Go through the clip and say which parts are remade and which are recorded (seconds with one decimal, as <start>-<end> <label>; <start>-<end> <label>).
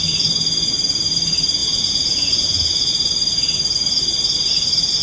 0.0-1.6 recorded; 1.6-2.9 remade; 2.9-5.0 recorded